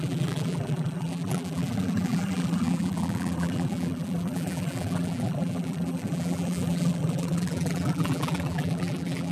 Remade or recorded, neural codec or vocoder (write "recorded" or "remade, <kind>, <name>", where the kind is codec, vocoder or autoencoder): remade, vocoder, BigVGAN v2